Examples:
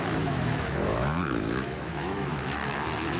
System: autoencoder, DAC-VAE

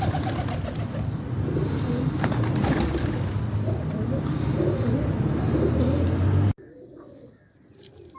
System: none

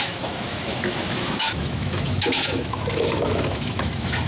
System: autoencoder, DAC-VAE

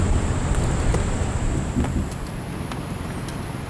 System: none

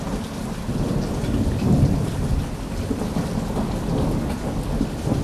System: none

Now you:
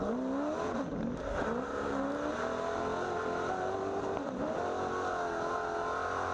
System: none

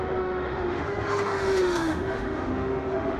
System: autoencoder, DAC-VAE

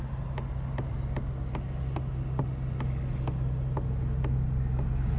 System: none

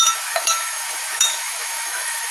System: autoencoder, DAC-VAE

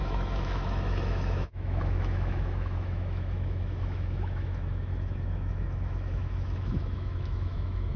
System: autoencoder, DAC-VAE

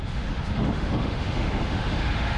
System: autoencoder, DAC-VAE